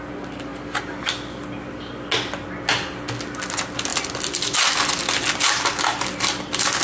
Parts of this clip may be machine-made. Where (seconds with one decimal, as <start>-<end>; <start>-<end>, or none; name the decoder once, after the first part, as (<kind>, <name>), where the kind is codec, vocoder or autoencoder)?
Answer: none